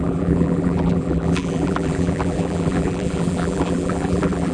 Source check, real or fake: fake